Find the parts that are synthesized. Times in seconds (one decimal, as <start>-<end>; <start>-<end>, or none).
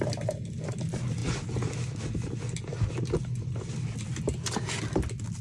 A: none